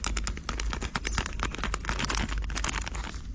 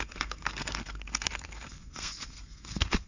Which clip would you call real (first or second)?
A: first